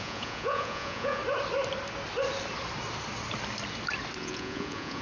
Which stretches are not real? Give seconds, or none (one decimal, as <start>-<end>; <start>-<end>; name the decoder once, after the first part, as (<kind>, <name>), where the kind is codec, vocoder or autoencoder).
0.0-1.2 (vocoder, Vocos); 4.2-5.0